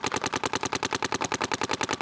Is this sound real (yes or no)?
yes